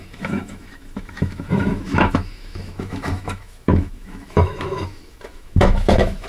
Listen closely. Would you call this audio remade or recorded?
remade